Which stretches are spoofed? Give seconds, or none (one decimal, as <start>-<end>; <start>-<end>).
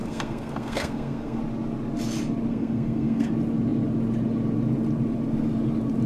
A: 0.0-1.4; 2.5-3.3